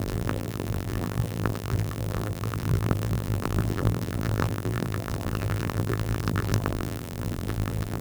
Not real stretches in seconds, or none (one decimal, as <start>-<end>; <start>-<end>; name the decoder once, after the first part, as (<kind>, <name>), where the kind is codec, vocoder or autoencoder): 0.0-8.0 (vocoder, BigVGAN v2)